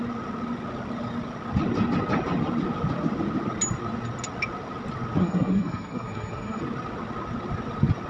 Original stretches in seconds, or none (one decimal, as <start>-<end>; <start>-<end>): 0.0-5.2; 6.6-8.1